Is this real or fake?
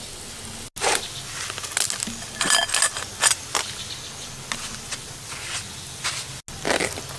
real